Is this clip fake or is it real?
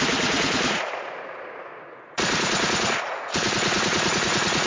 fake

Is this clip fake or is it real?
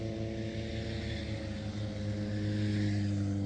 real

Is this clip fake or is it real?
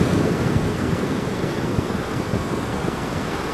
fake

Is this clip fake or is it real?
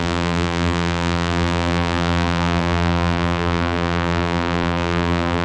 fake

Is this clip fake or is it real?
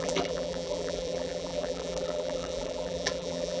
fake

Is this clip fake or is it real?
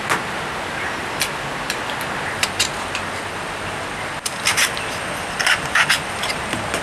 real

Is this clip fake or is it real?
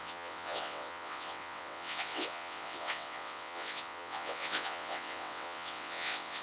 fake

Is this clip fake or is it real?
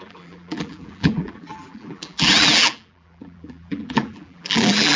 fake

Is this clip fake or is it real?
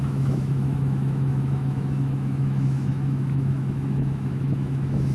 fake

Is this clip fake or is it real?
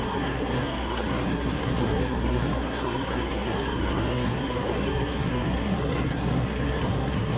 fake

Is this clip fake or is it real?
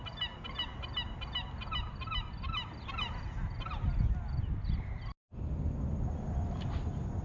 real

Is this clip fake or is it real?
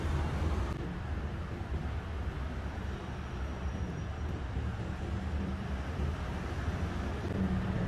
real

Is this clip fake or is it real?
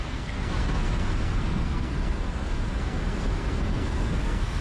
fake